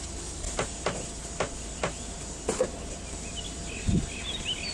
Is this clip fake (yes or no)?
no